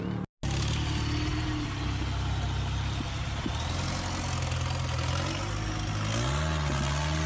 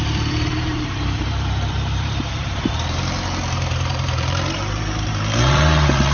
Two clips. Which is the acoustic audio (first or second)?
first